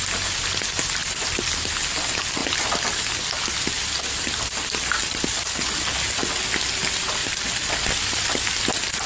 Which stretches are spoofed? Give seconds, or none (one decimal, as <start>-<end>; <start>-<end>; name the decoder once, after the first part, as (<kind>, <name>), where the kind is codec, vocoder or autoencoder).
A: 1.0-1.7 (vocoder, BigVGAN v2); 7.2-7.7